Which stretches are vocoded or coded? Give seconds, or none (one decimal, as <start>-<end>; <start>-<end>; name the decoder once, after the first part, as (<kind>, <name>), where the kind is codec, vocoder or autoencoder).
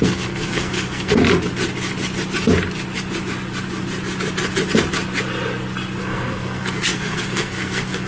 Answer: 0.0-1.2 (codec, SNAC); 6.0-8.1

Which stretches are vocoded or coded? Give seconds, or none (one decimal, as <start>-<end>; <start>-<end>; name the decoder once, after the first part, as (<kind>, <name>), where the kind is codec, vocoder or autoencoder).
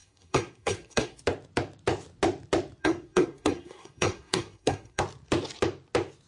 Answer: 0.0-1.2 (codec, SNAC); 2.8-5.0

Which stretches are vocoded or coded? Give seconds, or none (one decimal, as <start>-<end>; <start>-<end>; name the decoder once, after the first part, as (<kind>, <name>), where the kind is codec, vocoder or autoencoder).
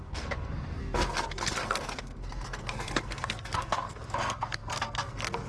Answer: 0.0-5.5 (codec, SNAC)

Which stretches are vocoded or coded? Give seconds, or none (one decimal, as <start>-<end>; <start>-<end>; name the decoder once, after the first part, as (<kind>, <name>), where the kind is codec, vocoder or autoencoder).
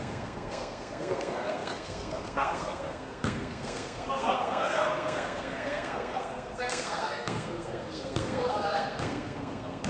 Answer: 0.0-9.9 (codec, SNAC)